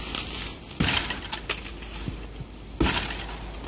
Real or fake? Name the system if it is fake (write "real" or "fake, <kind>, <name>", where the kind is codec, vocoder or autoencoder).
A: real